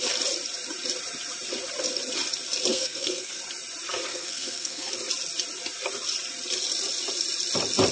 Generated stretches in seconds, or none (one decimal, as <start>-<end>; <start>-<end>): 2.7-3.4; 4.1-4.9